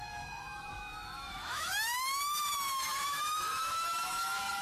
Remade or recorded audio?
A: remade